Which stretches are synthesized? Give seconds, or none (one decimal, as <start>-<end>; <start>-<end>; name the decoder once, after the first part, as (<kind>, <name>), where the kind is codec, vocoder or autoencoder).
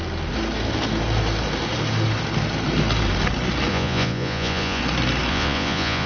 3.7-4.8 (vocoder, Vocos); 5.3-6.1